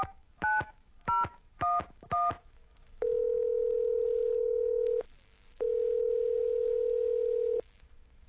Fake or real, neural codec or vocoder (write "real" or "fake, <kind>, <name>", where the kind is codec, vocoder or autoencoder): fake, autoencoder, DAC-VAE